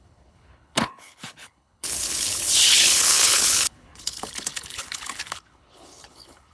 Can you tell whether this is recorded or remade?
remade